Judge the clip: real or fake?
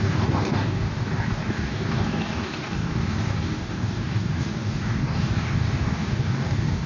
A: fake